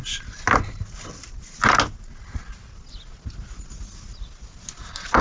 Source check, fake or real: real